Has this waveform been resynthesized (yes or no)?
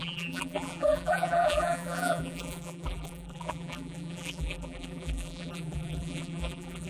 yes